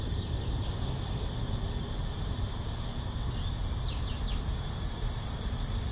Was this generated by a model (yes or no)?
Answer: no